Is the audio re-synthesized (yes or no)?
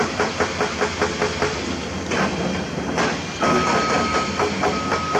no